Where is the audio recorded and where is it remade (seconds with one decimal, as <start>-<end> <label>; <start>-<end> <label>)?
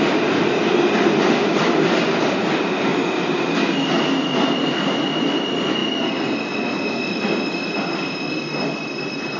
0.0-9.4 recorded